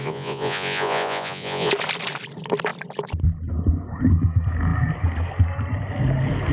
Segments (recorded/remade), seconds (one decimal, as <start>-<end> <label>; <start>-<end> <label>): 0.0-1.7 remade; 1.7-6.5 recorded

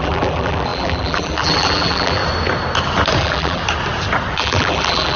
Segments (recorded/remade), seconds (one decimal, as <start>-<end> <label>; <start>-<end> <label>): 0.0-2.2 remade; 2.2-3.2 recorded; 3.2-3.6 remade; 3.6-4.3 recorded; 4.3-5.2 remade